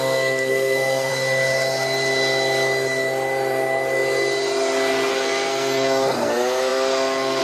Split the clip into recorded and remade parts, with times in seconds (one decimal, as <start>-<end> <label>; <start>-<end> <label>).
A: 0.0-1.1 remade; 1.1-5.1 recorded; 5.1-7.4 remade